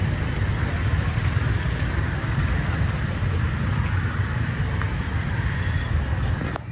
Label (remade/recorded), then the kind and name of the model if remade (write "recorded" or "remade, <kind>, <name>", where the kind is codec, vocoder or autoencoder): recorded